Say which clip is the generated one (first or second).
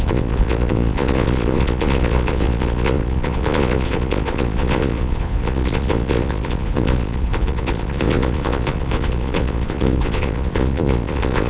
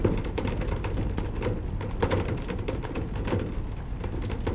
first